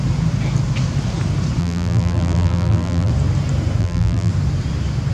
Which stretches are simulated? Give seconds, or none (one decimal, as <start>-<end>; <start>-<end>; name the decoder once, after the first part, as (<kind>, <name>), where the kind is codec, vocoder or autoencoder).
1.6-3.1 (vocoder, BigVGAN v2); 3.8-4.3